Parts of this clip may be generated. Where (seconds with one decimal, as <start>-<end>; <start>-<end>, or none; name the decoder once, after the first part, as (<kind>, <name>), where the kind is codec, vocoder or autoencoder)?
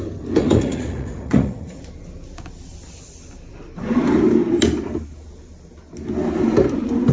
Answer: 0.4-1.8 (vocoder, Vocos)